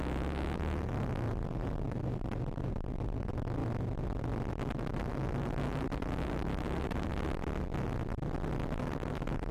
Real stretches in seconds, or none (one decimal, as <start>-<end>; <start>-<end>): 3.6-4.5; 7.1-8.8